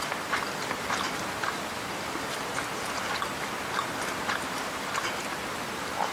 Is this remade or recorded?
recorded